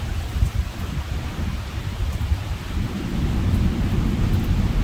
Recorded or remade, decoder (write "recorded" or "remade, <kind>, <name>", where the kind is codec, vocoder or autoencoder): remade, vocoder, BigVGAN v2